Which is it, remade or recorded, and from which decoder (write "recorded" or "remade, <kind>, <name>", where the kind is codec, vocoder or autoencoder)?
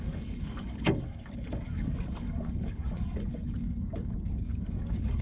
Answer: remade, codec, DAC